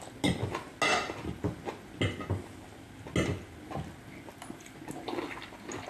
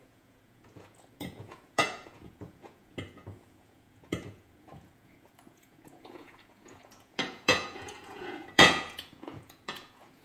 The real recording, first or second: first